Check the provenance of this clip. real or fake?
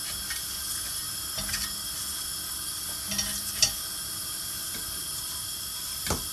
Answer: real